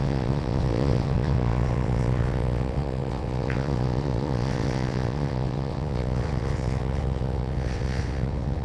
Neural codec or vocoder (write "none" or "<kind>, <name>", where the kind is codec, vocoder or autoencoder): vocoder, WaveNeXt